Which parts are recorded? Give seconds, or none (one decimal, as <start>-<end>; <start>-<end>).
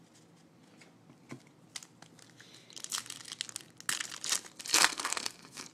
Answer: 0.0-4.7